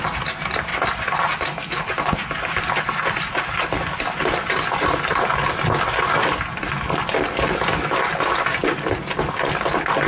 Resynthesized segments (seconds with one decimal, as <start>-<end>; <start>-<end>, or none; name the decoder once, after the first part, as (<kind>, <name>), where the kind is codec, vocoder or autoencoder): none